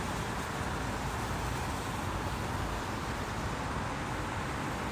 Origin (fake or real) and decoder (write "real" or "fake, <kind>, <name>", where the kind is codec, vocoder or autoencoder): real